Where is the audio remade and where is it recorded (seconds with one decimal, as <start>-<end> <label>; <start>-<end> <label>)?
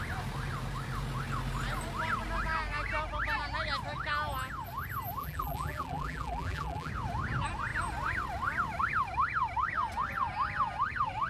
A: 0.0-5.2 recorded; 5.2-6.9 remade; 6.9-11.3 recorded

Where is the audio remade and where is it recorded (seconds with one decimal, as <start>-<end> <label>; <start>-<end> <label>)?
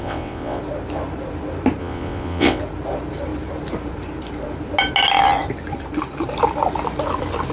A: 0.0-0.6 remade; 0.6-1.8 recorded; 1.8-2.6 remade; 2.6-7.5 recorded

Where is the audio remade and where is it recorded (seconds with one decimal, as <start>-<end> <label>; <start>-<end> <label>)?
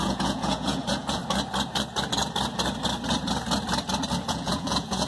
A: 0.0-1.2 remade; 1.2-4.3 recorded; 4.3-5.1 remade